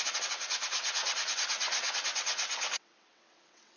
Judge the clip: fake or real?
fake